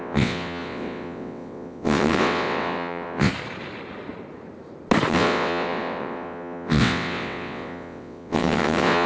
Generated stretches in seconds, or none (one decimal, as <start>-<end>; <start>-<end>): 0.0-3.3; 5.1-9.1